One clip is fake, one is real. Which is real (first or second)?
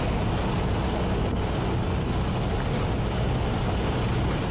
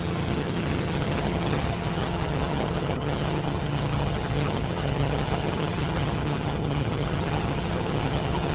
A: first